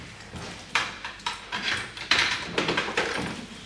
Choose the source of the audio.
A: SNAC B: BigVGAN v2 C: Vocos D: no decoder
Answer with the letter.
B